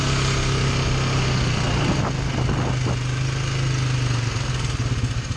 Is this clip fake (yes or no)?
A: no